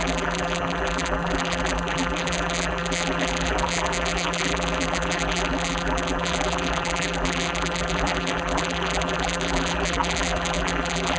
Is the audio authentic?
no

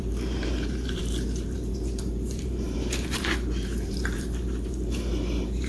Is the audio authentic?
no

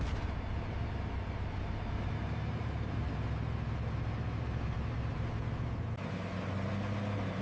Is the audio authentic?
yes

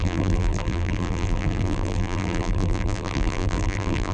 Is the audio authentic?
no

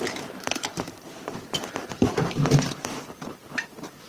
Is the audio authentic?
no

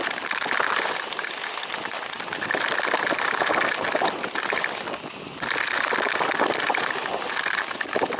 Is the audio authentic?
yes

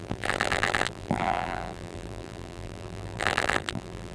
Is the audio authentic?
no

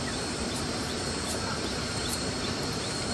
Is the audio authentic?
no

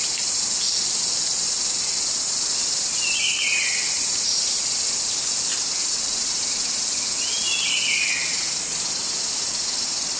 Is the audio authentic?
no